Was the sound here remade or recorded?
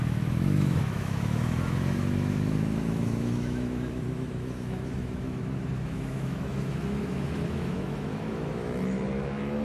remade